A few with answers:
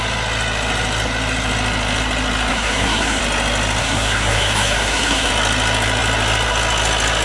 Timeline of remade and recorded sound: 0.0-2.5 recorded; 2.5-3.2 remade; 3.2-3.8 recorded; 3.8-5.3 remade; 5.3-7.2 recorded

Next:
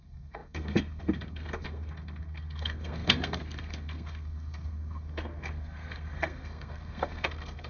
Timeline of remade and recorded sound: 0.0-7.7 remade